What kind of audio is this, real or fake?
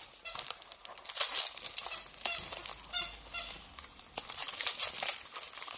real